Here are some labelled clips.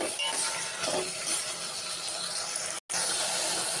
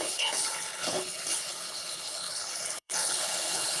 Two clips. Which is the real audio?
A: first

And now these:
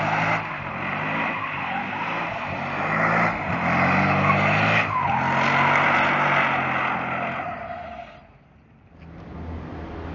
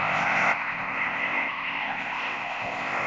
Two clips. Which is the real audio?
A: first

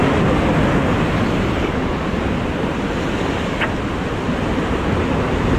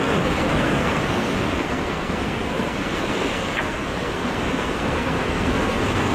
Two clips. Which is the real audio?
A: first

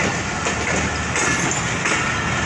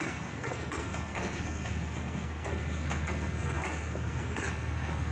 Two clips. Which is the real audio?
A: first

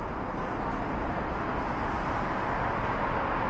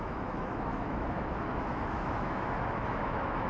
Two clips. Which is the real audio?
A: first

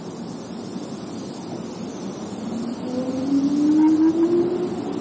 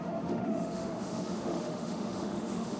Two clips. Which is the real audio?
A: first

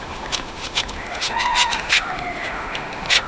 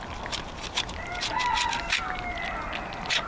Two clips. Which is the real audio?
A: second